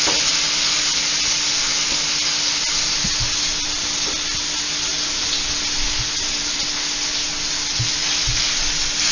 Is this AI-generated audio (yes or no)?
no